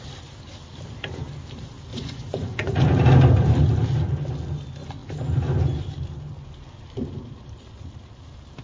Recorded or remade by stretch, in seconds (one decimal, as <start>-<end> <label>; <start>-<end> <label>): 0.0-1.9 recorded; 1.9-2.8 remade; 2.8-8.6 recorded